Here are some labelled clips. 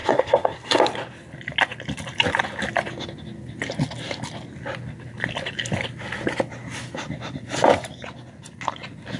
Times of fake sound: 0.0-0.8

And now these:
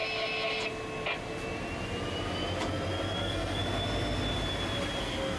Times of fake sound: 3.2-3.6; 5.0-5.4

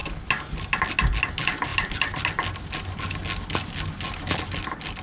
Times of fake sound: none

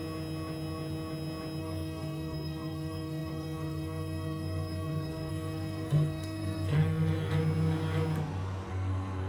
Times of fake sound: 1.6-7.3; 8.7-9.3